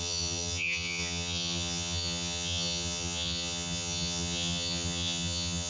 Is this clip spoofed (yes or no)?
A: yes